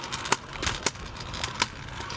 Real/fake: real